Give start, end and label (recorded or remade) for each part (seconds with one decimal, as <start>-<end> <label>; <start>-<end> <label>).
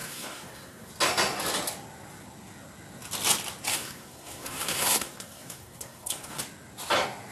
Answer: 0.0-0.9 remade; 0.9-3.7 recorded; 3.7-6.4 remade; 6.4-7.3 recorded